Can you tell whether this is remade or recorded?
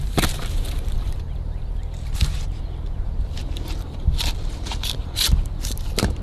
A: remade